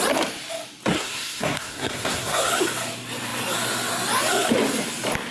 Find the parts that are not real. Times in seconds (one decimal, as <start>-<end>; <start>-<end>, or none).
0.9-2.5